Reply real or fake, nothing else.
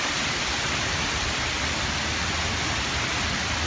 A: real